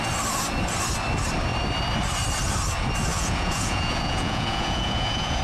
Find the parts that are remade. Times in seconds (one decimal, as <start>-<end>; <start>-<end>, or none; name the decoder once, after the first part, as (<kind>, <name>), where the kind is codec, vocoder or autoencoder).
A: 3.1-5.4 (vocoder, Vocos)